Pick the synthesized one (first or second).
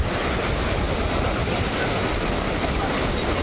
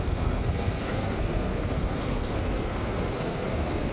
second